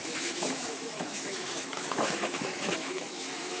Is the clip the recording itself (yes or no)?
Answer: no